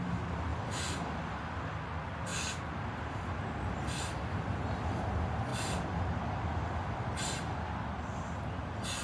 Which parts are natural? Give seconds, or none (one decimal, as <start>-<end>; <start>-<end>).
0.0-0.5; 1.2-5.5; 6.2-9.0